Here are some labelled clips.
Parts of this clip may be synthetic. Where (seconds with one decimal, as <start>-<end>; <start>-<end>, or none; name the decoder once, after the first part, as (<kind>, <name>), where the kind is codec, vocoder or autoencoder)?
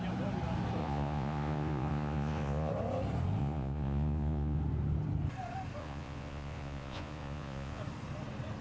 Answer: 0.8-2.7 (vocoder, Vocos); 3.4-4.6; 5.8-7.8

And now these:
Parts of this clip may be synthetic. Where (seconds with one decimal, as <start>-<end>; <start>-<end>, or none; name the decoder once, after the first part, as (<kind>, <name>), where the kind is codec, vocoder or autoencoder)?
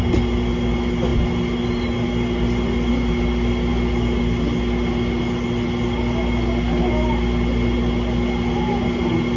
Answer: none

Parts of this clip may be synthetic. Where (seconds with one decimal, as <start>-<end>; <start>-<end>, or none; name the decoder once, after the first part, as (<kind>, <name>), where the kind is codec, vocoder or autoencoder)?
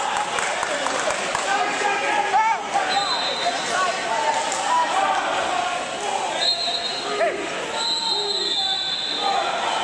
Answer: none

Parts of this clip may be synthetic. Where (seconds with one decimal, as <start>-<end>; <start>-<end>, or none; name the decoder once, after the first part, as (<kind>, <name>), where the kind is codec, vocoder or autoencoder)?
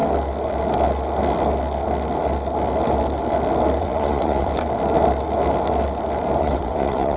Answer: 3.8-4.5 (vocoder, WaveNeXt); 6.4-7.2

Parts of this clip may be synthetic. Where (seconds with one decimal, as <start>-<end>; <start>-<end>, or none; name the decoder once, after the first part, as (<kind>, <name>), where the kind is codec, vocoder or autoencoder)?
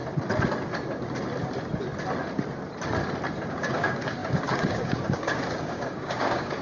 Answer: 3.5-6.6 (codec, DAC)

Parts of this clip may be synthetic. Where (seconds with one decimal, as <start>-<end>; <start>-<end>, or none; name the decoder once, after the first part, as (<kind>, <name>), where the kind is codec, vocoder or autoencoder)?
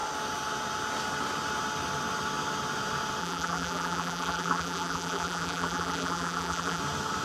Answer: 3.2-6.8 (vocoder, BigVGAN v2)